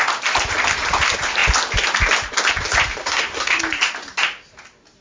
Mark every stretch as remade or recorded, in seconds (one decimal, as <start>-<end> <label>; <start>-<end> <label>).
0.0-3.0 recorded; 3.0-3.6 remade; 3.6-5.0 recorded